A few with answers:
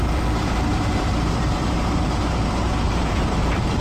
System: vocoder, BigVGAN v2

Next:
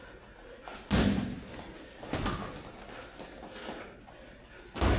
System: none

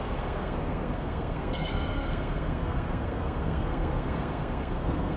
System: codec, SNAC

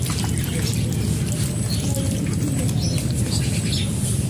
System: none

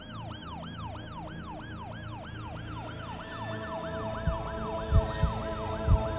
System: none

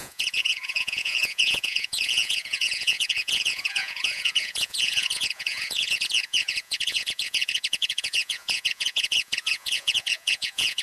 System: vocoder, Vocos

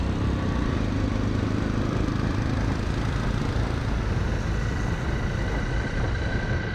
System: none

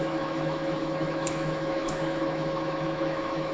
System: autoencoder, DAC-VAE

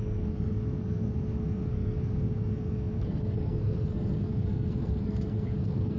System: codec, SNAC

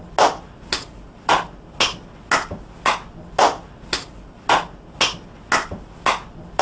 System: none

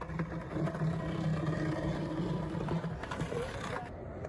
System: none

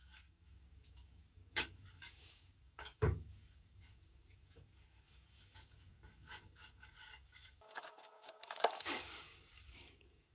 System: codec, DAC